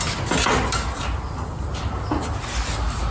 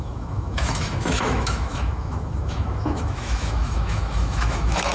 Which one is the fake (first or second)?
second